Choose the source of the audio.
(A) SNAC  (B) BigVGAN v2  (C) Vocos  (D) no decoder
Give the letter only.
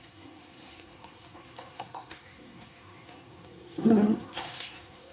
A